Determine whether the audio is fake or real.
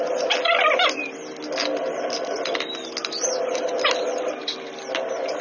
real